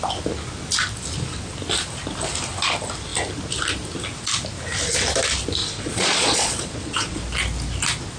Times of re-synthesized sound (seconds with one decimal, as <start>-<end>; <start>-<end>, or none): 5.6-7.2